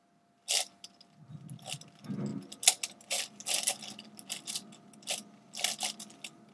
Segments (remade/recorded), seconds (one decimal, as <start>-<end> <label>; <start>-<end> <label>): 0.0-6.5 recorded